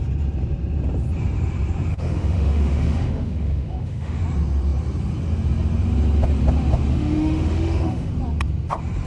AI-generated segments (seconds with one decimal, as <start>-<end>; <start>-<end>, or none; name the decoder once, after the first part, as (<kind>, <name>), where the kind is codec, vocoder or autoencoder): 1.9-4.2 (autoencoder, DAC-VAE); 6.9-8.1